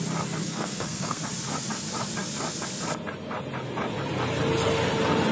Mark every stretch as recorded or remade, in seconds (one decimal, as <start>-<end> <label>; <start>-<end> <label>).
0.0-0.4 recorded; 0.4-1.2 remade; 1.2-5.3 recorded